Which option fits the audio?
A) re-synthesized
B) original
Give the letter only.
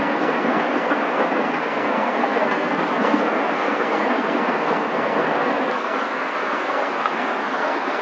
A